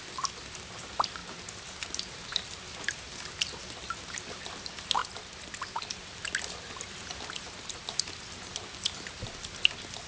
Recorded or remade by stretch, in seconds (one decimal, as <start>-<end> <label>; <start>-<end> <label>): 0.0-10.1 recorded